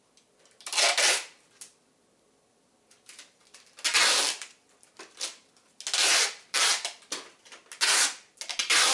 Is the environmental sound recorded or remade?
recorded